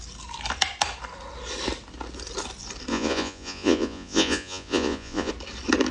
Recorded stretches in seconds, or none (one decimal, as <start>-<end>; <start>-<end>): 0.0-2.9; 5.3-5.9